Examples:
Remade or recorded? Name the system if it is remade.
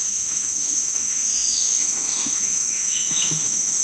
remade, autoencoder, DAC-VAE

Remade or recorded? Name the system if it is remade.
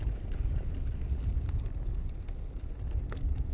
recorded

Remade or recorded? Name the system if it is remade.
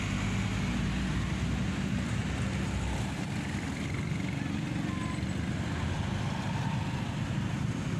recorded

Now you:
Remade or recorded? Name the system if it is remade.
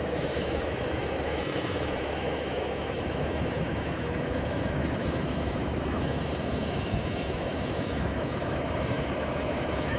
remade, autoencoder, DAC-VAE